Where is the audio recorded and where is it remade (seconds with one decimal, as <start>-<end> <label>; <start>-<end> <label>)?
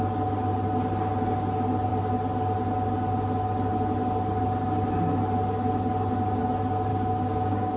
0.0-6.9 recorded; 6.9-7.8 remade